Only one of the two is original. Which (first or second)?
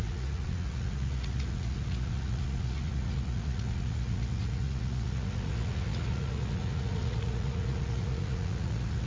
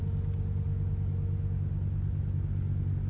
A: second